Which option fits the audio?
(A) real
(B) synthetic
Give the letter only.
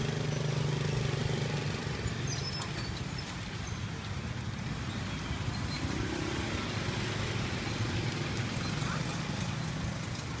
A